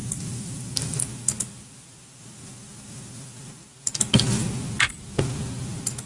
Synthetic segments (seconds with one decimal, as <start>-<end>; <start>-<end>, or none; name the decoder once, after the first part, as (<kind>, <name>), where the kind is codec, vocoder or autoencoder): none